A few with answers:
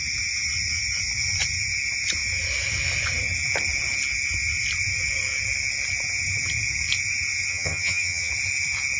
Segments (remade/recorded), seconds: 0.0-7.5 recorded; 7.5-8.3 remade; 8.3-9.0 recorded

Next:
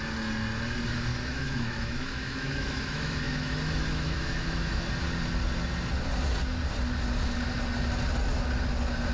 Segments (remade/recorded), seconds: 0.0-1.1 recorded; 1.1-4.8 remade; 4.8-9.1 recorded

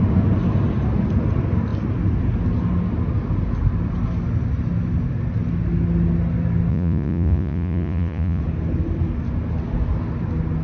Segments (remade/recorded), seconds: 0.0-6.7 recorded; 6.7-8.4 remade; 8.4-10.6 recorded

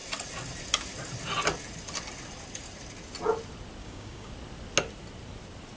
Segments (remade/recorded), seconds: 0.0-3.8 recorded; 3.8-4.3 remade; 4.3-5.8 recorded